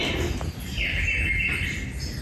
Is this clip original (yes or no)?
yes